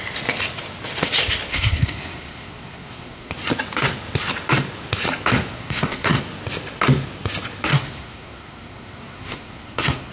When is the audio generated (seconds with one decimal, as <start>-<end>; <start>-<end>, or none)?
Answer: 1.5-3.3; 5.5-6.2; 7.7-10.1